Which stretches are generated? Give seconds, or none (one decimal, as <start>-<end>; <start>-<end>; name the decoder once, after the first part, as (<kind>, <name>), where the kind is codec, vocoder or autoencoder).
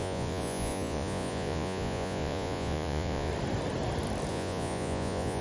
0.0-3.3 (vocoder, Vocos); 4.3-5.4